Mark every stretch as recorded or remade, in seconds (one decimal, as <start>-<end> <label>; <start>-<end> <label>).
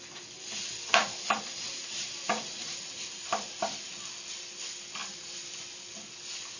0.0-1.0 recorded; 1.0-3.9 remade; 3.9-5.0 recorded; 5.0-5.5 remade; 5.5-6.6 recorded